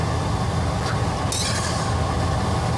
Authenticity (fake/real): real